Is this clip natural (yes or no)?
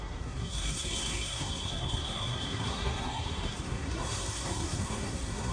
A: no